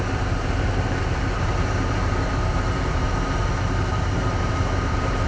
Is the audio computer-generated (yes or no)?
yes